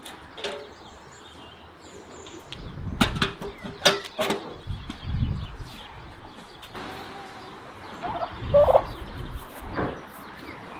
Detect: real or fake real